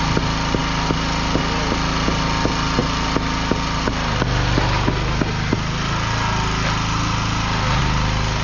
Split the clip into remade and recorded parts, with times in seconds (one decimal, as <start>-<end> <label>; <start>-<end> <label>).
0.0-8.4 recorded